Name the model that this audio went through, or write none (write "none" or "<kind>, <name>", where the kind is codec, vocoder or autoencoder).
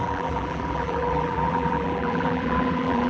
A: vocoder, BigVGAN v2